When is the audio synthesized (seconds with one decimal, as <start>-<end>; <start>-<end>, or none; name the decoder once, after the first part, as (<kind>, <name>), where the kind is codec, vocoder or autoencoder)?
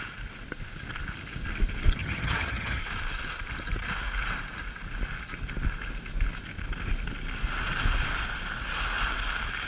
2.0-2.8 (vocoder, HiFi-GAN)